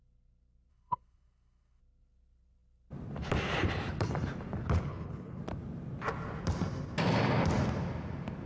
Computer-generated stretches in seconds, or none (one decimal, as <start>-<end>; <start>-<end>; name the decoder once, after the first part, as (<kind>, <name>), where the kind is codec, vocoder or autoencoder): 0.7-1.8 (codec, HILCodec); 4.9-5.4